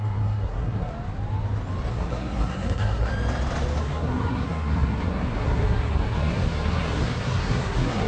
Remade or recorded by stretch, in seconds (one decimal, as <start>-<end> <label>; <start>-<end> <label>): 0.0-0.9 remade; 0.9-1.9 recorded; 1.9-3.1 remade; 3.1-3.8 recorded; 3.8-8.1 remade

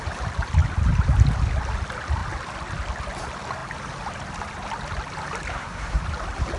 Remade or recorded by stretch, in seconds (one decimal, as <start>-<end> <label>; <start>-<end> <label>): 0.0-5.5 recorded; 5.5-6.0 remade; 6.0-6.6 recorded

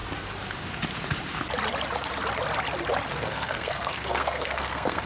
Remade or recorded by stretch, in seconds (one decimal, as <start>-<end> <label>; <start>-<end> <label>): 0.0-3.1 recorded; 3.1-5.1 remade

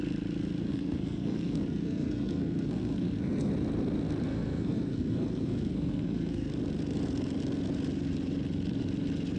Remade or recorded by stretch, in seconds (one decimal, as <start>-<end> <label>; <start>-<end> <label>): 0.0-0.7 recorded; 0.7-3.5 remade; 3.5-4.3 recorded; 4.3-6.5 remade; 6.5-9.4 recorded

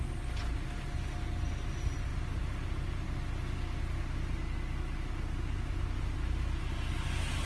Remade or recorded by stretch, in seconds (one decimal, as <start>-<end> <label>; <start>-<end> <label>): 0.0-7.5 recorded

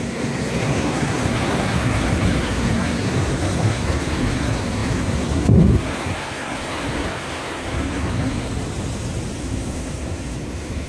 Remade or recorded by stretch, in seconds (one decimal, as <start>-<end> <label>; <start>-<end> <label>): 0.0-8.5 remade; 8.5-9.4 recorded; 9.4-10.9 remade

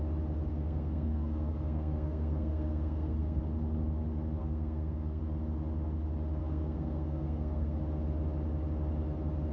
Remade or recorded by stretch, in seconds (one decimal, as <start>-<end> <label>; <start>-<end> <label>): 0.0-0.5 recorded; 0.5-3.4 remade; 3.4-4.4 recorded; 4.4-5.2 remade; 5.2-6.4 recorded; 6.4-7.8 remade; 7.8-9.5 recorded

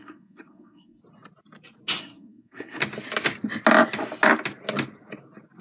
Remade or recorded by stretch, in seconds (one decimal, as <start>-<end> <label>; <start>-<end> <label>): 0.0-1.0 remade; 1.0-2.0 recorded; 2.0-2.8 remade; 2.8-5.6 recorded